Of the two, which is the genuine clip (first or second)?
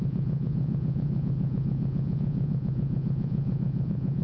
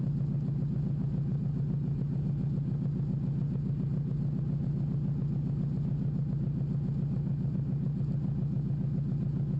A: second